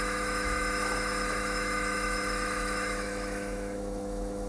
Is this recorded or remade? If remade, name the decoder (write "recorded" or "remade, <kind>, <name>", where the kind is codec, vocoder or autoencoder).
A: remade, autoencoder, DAC-VAE